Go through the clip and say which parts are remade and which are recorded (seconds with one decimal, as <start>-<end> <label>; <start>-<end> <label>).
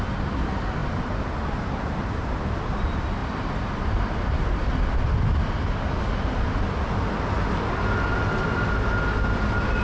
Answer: 0.0-0.8 recorded; 0.8-2.8 remade; 2.8-9.8 recorded